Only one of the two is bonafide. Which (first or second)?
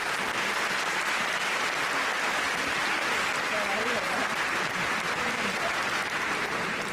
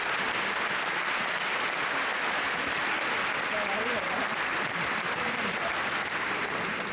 first